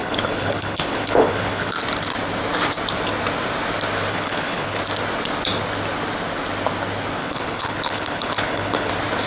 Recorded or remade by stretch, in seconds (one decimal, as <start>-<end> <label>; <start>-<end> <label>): 0.0-1.8 remade; 1.8-4.1 recorded; 4.1-4.8 remade; 4.8-7.2 recorded; 7.2-8.9 remade; 8.9-9.3 recorded